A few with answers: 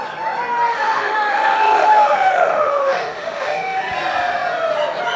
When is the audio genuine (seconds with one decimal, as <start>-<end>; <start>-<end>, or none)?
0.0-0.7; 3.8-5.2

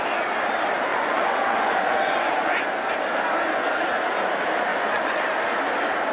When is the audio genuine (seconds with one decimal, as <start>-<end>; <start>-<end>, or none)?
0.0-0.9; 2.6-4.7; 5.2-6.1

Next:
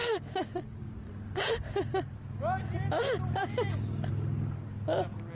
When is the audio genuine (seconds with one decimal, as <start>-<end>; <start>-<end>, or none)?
1.1-3.4; 4.1-5.3

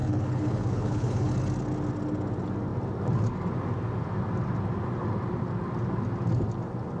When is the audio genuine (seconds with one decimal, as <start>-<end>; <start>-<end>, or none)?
1.3-7.0

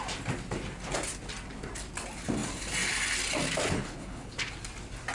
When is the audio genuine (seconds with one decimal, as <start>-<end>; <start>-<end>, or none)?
0.0-3.8; 4.3-5.1

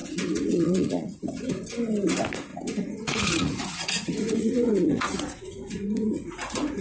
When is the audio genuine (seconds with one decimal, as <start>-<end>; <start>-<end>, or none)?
1.5-2.5

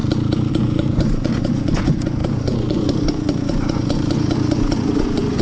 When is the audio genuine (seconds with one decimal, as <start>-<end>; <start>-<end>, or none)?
0.0-0.5